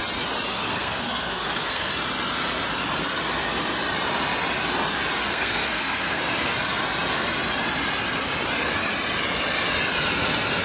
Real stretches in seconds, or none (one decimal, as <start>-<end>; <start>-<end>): 0.0-0.5; 1.9-5.3; 6.2-10.6